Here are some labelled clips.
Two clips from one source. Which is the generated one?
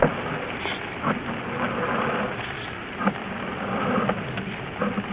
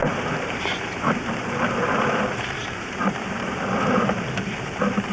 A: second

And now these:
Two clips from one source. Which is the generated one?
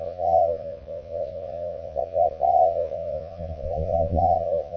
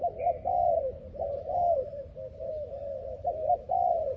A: first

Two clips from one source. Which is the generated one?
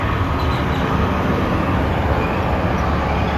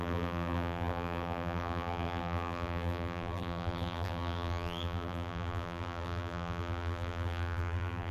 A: second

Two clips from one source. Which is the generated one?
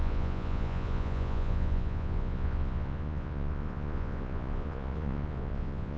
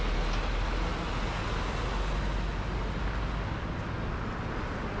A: first